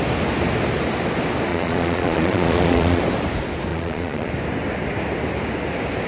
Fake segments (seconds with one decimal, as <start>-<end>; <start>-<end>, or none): 1.5-3.0; 3.7-4.3